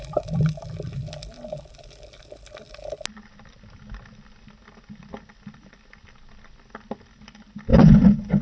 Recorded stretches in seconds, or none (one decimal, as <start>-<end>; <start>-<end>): 0.0-7.7

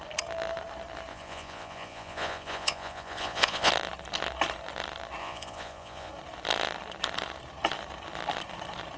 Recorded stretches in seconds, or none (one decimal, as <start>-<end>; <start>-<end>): 0.0-1.1; 3.7-5.2; 6.1-9.0

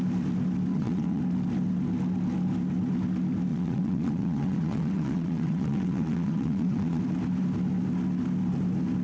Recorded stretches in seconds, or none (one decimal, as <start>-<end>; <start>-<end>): 0.0-0.7; 1.2-3.5; 7.0-9.0

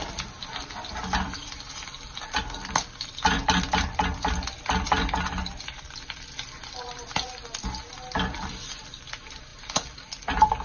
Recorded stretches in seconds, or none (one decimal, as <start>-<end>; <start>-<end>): 0.0-10.6

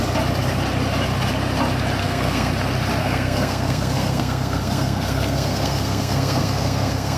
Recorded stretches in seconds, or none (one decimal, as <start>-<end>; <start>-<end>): 0.0-2.0; 2.5-3.0

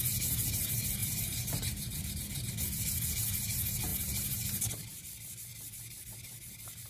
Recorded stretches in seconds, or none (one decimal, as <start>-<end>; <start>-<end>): 0.0-1.0; 2.1-3.9; 4.6-6.9